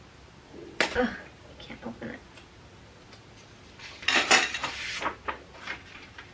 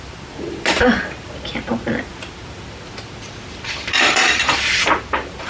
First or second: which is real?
first